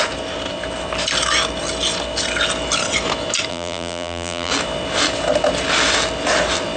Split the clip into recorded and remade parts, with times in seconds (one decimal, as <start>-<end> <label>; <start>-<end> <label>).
0.0-3.5 recorded; 3.5-4.5 remade; 4.5-6.8 recorded